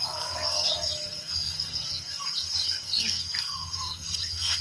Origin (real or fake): fake